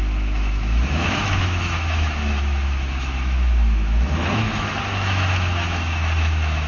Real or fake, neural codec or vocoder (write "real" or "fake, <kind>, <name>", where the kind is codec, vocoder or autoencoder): fake, autoencoder, DAC-VAE